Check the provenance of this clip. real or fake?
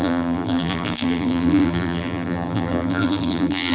fake